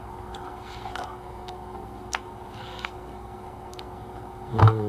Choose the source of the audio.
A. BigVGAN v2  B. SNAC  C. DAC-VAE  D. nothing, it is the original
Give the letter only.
B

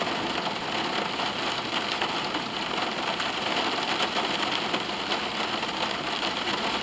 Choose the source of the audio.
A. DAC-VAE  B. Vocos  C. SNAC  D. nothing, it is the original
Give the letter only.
D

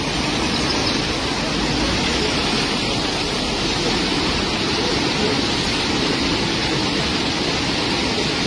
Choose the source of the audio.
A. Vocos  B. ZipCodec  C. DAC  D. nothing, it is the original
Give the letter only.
D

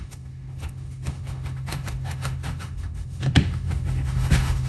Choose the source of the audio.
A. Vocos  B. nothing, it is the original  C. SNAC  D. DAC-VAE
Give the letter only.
D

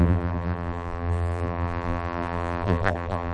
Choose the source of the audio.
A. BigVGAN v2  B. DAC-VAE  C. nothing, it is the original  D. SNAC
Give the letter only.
A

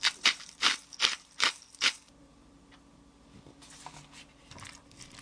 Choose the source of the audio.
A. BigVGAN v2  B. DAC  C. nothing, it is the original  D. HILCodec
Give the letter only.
A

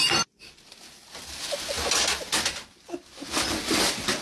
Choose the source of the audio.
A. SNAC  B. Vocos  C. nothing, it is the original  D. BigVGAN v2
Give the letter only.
C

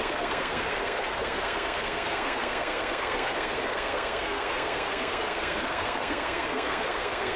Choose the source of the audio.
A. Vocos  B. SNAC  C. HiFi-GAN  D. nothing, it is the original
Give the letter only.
B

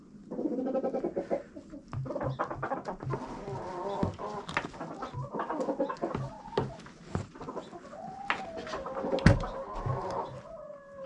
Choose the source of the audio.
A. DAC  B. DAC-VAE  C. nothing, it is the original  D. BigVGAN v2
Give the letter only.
C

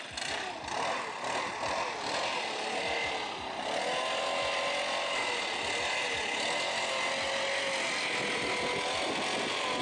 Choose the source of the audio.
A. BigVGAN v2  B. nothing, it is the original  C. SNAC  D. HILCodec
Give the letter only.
B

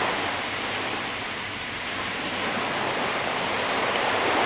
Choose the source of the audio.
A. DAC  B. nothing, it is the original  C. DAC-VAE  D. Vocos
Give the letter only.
B